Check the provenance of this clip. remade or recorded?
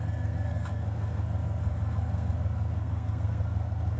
remade